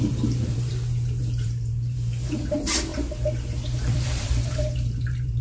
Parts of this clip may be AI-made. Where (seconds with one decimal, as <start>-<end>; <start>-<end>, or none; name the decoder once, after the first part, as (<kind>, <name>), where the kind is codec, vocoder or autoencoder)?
0.0-0.7 (vocoder, BigVGAN v2); 1.2-5.4